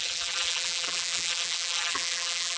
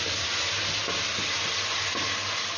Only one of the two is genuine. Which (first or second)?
second